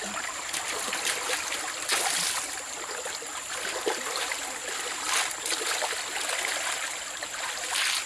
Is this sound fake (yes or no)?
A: no